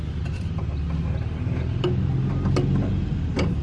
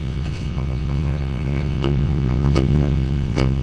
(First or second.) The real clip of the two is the first